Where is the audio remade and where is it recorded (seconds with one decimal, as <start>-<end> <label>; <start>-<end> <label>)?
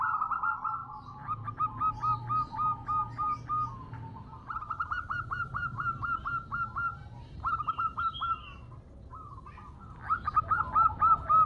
0.0-4.3 recorded; 4.3-6.2 remade; 6.2-6.9 recorded; 6.9-8.9 remade; 8.9-11.5 recorded